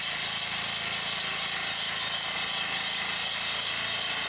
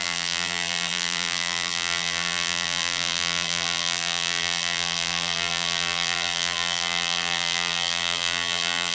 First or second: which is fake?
second